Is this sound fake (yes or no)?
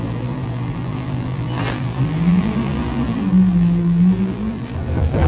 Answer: yes